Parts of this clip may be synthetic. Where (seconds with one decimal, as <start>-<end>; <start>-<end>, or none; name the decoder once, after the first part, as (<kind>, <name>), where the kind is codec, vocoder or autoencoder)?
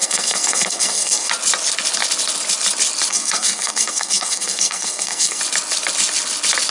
0.0-1.3 (codec, SNAC); 3.1-5.4